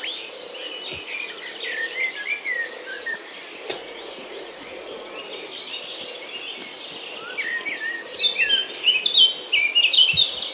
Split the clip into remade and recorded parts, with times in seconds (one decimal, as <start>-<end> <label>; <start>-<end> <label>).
0.0-3.7 recorded; 3.7-5.2 remade; 5.2-10.5 recorded